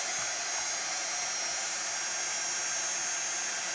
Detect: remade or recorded recorded